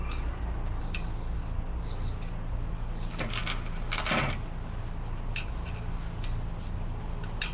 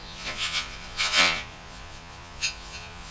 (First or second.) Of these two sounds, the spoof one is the second